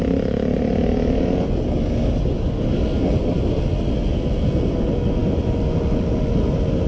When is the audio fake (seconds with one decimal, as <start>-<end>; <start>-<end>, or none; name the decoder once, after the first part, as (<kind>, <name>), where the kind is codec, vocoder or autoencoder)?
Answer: none